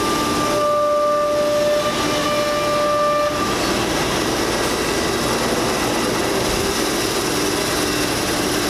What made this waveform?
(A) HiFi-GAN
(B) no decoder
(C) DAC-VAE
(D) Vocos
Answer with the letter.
B